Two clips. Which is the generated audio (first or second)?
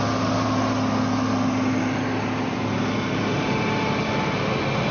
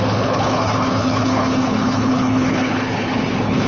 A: second